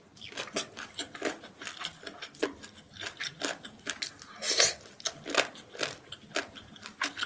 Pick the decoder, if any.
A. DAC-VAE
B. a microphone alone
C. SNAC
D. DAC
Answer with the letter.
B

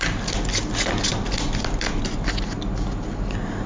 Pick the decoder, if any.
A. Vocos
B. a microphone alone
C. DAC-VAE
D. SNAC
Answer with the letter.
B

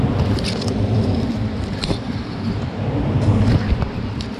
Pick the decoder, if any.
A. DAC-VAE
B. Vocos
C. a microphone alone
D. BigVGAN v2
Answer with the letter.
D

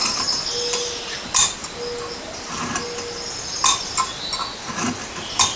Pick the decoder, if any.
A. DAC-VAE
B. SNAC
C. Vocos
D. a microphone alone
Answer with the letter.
D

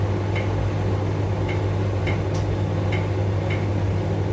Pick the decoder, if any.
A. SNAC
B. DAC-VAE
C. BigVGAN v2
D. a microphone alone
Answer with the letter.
D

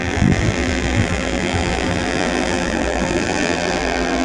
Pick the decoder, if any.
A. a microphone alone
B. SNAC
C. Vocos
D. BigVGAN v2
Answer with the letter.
D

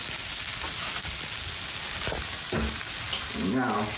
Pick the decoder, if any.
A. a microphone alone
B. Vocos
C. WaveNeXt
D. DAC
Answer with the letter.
A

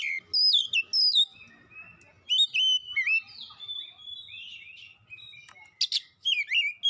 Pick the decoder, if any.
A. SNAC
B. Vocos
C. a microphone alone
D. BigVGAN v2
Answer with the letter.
C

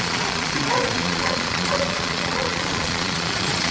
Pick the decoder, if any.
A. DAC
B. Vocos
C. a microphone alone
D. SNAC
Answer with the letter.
B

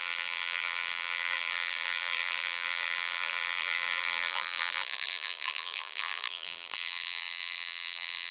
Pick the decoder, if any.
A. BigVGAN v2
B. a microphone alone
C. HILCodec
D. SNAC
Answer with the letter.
A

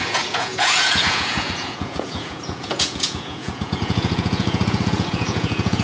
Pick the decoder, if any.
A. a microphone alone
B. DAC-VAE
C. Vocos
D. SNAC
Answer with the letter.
C